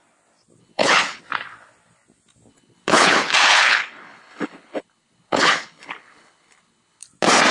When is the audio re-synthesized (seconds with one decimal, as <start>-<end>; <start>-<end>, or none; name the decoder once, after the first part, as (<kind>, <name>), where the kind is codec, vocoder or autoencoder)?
0.6-1.2 (codec, HILCodec); 2.5-7.0